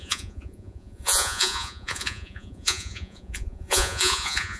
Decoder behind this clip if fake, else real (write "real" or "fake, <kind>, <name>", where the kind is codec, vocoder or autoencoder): fake, vocoder, Vocos